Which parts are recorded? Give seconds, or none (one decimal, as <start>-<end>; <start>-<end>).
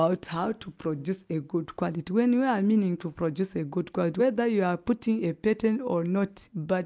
0.0-6.9